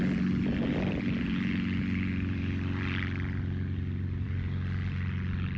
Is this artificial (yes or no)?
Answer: yes